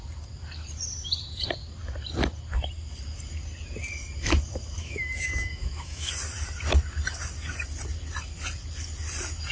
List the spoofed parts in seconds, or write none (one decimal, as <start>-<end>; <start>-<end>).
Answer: 4.8-6.1